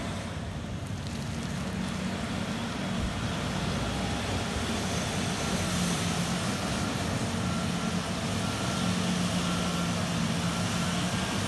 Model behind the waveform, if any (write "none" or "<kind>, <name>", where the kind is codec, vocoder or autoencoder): none